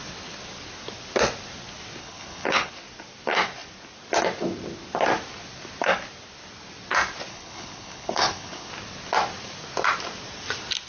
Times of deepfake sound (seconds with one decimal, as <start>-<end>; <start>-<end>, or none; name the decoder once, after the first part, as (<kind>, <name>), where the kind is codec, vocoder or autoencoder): 2.0-2.7 (codec, HILCodec); 7.3-8.7